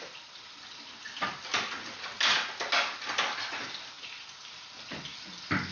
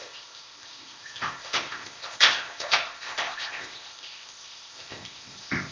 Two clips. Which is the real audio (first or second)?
first